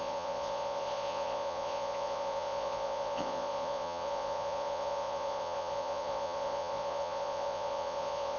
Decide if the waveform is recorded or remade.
remade